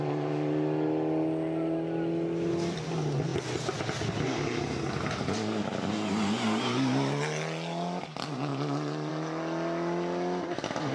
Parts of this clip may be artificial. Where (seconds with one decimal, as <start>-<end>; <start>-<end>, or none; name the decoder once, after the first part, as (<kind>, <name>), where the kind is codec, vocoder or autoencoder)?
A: none